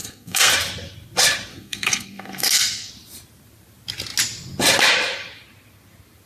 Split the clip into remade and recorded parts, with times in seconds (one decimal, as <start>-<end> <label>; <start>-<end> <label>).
0.0-0.5 remade; 0.5-1.5 recorded; 1.5-2.9 remade; 2.9-6.3 recorded